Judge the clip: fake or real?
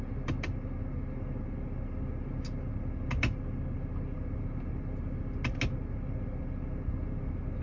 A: real